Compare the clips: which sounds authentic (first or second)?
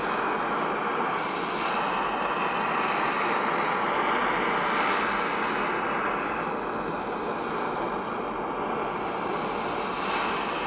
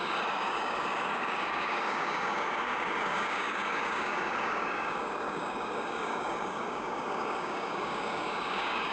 first